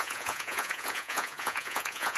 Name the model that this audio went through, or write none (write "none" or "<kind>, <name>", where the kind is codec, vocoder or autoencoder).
vocoder, Vocos